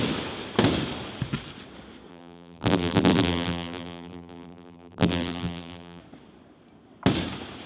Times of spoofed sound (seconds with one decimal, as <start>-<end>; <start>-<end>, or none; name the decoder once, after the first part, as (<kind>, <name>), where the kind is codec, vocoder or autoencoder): 2.1-6.0 (vocoder, BigVGAN v2)